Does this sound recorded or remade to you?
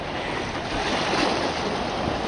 recorded